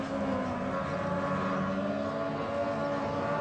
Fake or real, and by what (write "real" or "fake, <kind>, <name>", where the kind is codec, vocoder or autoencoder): real